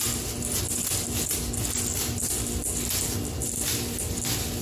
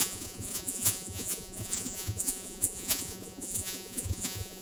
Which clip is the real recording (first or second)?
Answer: first